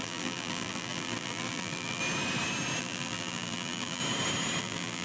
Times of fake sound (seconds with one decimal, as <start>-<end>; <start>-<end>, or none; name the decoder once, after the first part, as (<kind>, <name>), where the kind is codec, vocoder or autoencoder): 0.0-2.0 (vocoder, BigVGAN v2); 2.8-4.0; 4.6-5.0